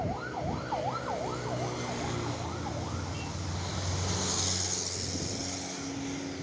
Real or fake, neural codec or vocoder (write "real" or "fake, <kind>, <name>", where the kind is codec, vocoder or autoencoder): real